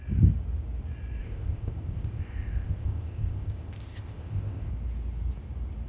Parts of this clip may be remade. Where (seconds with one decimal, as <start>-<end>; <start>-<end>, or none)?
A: 1.2-4.7